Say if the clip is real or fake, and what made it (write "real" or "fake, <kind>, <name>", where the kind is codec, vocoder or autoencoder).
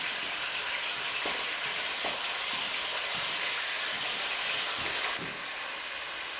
real